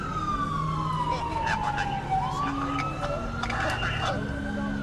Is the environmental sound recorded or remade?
recorded